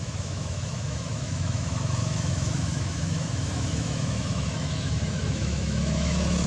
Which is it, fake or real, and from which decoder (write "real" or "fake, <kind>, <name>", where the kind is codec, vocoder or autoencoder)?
fake, autoencoder, DAC-VAE